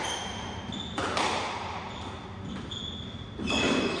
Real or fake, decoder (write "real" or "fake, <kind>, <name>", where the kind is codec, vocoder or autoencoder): real